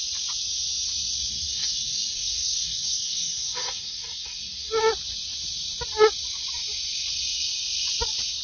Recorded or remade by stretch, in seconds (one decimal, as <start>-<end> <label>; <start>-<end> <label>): 0.0-1.3 recorded; 1.3-4.7 remade; 4.7-8.4 recorded